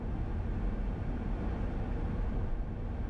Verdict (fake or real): real